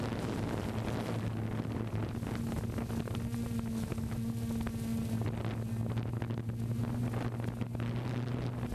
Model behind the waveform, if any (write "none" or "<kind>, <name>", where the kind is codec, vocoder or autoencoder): none